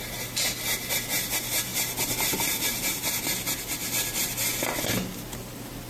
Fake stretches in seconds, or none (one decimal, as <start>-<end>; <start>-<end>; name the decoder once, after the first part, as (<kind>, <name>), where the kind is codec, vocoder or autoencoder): none